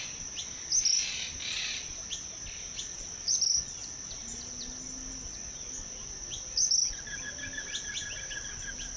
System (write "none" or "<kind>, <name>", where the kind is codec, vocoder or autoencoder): none